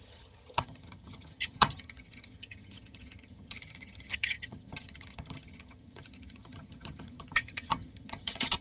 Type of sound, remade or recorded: remade